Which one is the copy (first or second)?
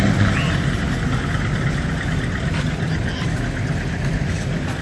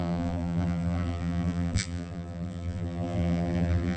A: second